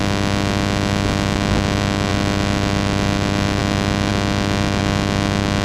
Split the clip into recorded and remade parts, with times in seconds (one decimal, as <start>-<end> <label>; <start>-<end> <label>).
0.0-5.6 recorded